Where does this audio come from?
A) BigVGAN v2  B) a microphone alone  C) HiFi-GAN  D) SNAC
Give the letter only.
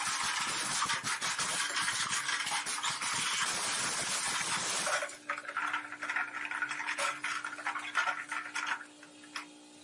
B